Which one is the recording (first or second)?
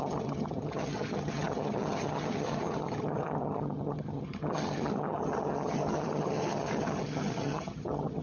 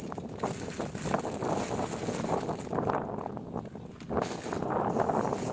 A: second